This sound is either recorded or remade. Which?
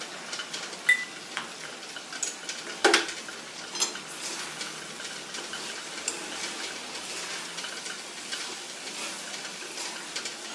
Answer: recorded